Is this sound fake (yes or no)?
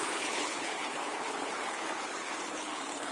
yes